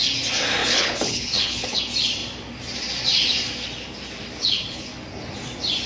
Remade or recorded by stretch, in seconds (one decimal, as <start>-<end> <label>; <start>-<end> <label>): 0.0-0.6 recorded; 0.6-1.8 remade; 1.8-4.4 recorded; 4.4-4.9 remade; 4.9-5.9 recorded